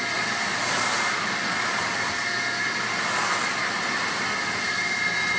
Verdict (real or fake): real